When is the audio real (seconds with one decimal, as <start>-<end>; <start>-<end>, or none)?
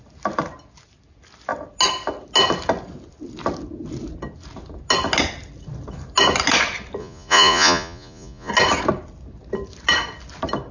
0.0-7.0; 8.5-10.7